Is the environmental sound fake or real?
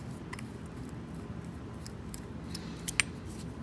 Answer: real